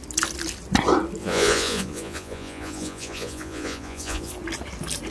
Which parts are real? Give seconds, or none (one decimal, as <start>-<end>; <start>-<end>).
0.0-1.2; 4.3-5.1